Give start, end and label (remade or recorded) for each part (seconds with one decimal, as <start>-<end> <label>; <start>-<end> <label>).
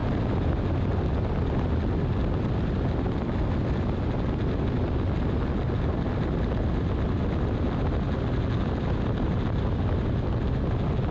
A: 0.0-11.1 recorded